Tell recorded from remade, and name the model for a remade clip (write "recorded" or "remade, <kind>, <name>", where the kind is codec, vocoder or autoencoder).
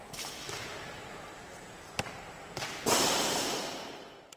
remade, vocoder, BigVGAN v2